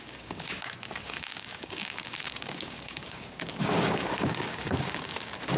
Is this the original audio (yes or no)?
no